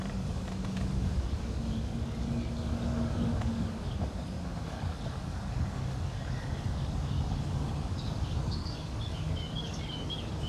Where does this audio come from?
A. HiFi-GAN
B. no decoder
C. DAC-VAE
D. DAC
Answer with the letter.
D